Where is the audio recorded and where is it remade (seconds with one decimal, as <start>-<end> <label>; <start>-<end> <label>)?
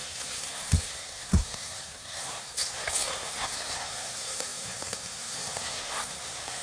0.0-6.6 remade